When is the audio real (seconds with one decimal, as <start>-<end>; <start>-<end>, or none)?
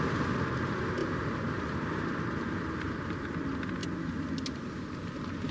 0.0-1.0; 3.2-5.5